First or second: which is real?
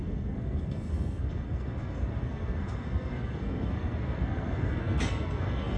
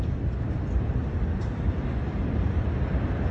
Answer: second